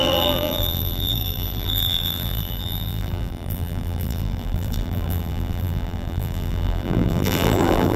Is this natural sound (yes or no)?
no